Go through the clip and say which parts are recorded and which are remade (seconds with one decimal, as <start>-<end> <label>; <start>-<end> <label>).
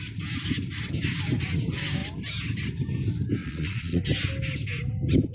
0.0-3.4 recorded; 3.4-4.0 remade; 4.0-5.3 recorded